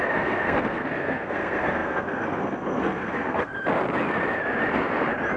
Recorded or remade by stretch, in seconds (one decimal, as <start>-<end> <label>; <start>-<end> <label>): 0.0-3.5 remade; 3.5-5.4 recorded